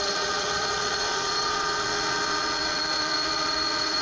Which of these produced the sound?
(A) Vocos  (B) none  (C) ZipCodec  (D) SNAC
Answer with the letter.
A